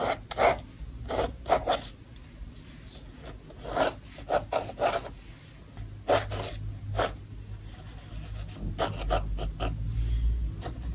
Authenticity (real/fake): real